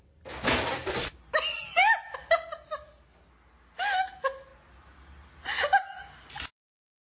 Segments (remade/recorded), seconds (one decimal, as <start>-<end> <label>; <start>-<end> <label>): 0.0-7.0 recorded

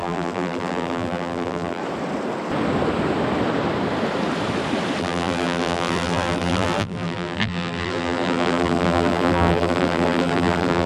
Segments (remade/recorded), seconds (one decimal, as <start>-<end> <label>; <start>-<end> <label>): 0.0-1.8 remade; 1.8-5.0 recorded; 5.0-10.9 remade

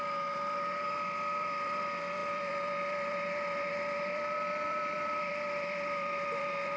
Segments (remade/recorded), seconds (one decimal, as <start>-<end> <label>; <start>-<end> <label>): 0.0-6.8 remade